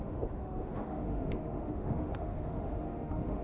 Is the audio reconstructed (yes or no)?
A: yes